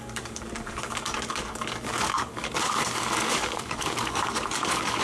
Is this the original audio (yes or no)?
no